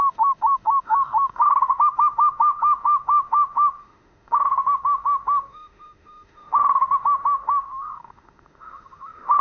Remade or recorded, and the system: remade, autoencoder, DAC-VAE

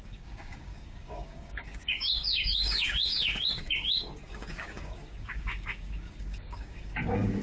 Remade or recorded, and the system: remade, codec, DAC